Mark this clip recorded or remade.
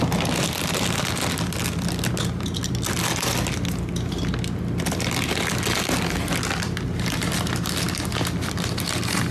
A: recorded